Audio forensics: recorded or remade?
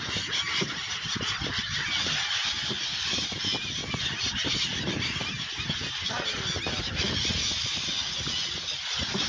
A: recorded